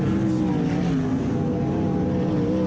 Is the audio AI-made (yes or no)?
no